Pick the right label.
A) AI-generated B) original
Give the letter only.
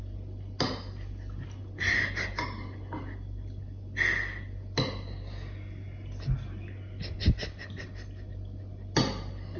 B